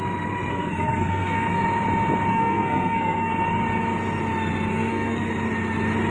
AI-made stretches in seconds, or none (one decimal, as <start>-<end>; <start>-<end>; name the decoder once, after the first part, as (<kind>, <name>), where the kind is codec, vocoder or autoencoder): 0.5-1.6 (codec, SNAC); 2.3-3.3; 4.7-5.3